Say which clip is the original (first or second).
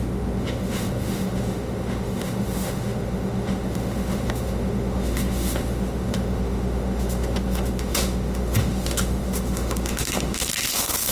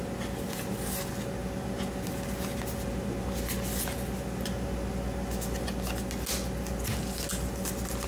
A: second